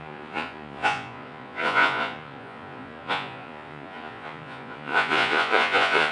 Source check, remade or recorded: remade